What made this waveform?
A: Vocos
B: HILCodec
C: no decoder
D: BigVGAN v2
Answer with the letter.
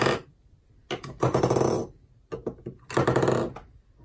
C